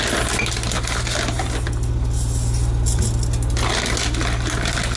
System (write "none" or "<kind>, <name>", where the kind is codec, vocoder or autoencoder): none